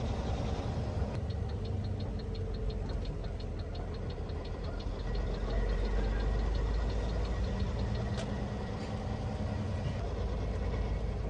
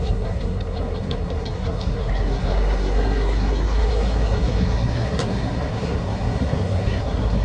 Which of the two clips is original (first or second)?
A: first